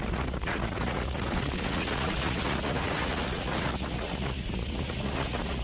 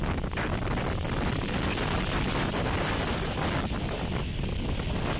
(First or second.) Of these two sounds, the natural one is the second